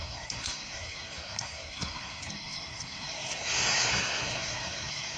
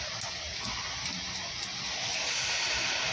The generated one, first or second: first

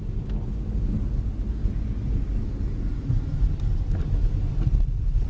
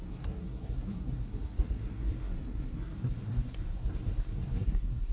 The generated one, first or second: second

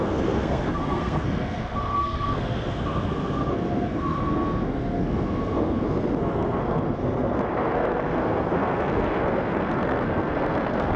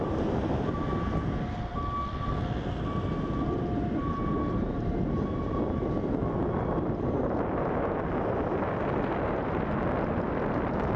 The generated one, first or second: first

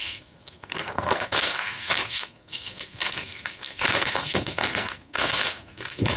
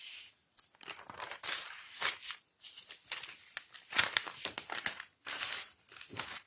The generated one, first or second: first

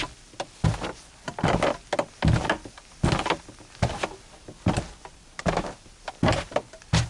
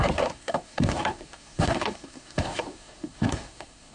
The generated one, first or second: second